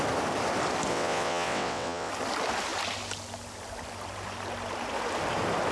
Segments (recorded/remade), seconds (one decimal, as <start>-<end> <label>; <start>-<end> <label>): 0.0-0.9 recorded; 0.9-2.1 remade; 2.1-5.7 recorded